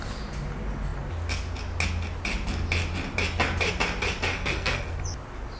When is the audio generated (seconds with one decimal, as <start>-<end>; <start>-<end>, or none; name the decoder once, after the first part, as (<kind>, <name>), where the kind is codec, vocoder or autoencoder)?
4.3-5.0 (codec, SNAC)

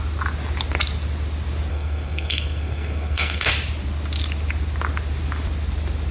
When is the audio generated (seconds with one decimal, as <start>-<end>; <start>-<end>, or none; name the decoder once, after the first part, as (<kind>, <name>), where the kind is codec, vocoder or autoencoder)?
1.7-3.5 (codec, SNAC)

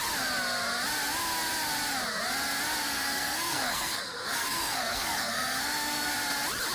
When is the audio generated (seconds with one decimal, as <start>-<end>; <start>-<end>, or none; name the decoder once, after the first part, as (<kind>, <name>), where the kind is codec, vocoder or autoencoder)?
2.8-6.1 (codec, SNAC)